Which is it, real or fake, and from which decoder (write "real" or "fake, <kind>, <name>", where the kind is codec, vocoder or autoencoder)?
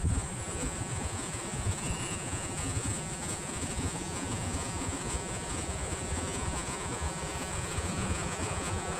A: fake, vocoder, Vocos